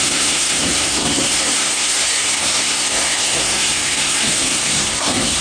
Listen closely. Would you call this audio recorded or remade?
remade